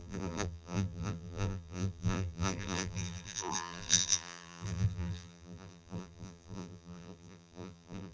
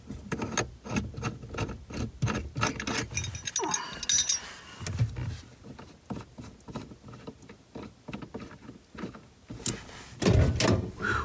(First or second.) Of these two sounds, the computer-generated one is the first